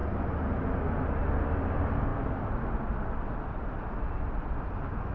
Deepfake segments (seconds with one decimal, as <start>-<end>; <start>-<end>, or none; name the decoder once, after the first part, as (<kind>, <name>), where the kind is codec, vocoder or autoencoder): none